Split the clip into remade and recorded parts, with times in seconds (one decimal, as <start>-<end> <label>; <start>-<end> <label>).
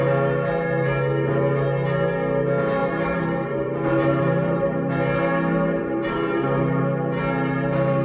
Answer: 0.0-2.8 recorded; 2.8-4.9 remade; 4.9-5.8 recorded; 5.8-6.8 remade; 6.8-8.0 recorded